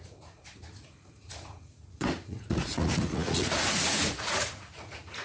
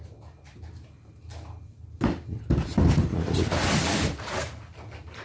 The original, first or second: second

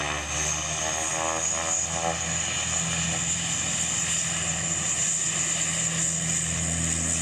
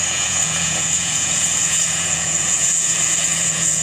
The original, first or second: first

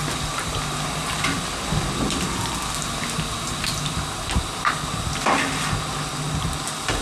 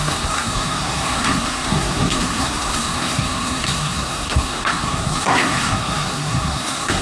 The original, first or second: first